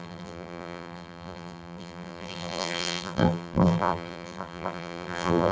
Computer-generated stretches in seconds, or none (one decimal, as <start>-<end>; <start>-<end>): 0.0-5.5